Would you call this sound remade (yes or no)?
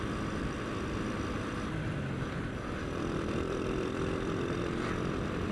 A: yes